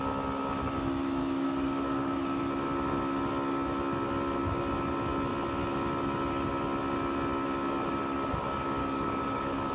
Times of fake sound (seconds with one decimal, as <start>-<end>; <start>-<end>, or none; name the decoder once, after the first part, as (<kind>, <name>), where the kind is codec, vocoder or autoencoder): 1.2-2.4 (codec, DAC); 8.8-9.7